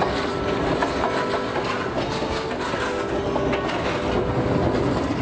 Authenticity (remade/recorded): recorded